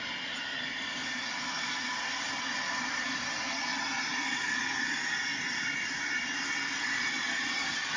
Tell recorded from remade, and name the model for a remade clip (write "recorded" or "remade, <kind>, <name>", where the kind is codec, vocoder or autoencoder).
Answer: recorded